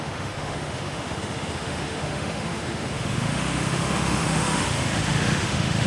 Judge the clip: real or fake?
fake